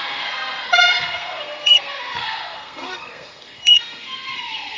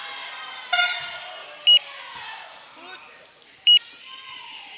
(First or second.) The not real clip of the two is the first